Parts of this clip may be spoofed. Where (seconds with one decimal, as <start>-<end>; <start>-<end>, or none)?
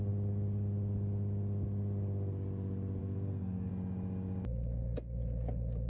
3.0-3.7